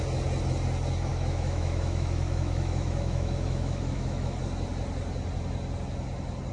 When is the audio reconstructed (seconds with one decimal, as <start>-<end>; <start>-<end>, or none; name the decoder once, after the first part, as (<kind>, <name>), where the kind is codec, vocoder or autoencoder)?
1.1-4.4 (autoencoder, DAC-VAE)